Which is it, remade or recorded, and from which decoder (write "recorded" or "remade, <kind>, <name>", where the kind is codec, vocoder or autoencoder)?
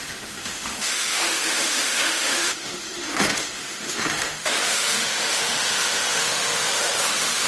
remade, autoencoder, DAC-VAE